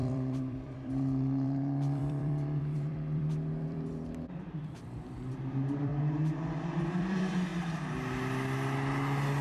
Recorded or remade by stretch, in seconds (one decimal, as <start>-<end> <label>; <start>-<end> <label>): 0.0-5.9 remade; 5.9-6.6 recorded; 6.6-7.5 remade; 7.5-9.4 recorded